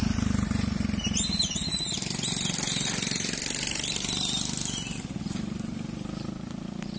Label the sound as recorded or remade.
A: recorded